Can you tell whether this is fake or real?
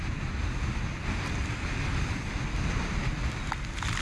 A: real